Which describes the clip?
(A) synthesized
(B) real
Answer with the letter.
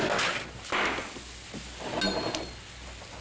B